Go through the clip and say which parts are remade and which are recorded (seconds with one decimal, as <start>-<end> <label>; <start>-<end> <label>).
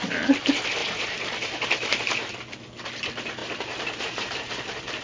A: 0.0-0.8 recorded; 0.8-2.0 remade; 2.0-3.4 recorded; 3.4-4.3 remade; 4.3-5.0 recorded